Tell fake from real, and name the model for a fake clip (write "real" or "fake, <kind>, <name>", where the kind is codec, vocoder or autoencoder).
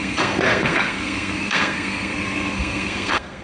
fake, codec, SNAC